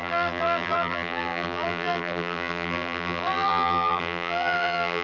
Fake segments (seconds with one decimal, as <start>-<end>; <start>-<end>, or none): 0.0-5.0